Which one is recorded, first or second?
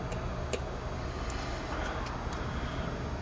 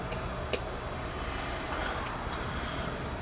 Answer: first